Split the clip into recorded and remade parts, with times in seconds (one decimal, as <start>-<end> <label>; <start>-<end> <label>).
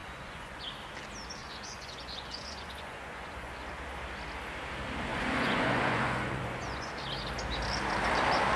0.0-0.7 remade; 0.7-1.4 recorded; 1.4-3.7 remade; 3.7-5.1 recorded; 5.1-6.9 remade; 6.9-8.6 recorded